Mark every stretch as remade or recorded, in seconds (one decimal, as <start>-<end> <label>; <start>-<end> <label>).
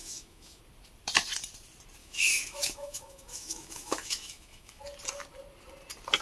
0.0-0.6 remade; 0.6-2.0 recorded; 2.0-4.8 remade; 4.8-6.2 recorded